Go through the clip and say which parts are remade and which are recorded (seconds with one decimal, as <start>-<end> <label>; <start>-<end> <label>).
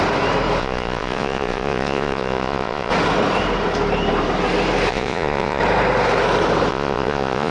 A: 0.0-0.6 recorded; 0.6-2.9 remade; 2.9-4.9 recorded; 4.9-5.6 remade; 5.6-6.7 recorded; 6.7-7.5 remade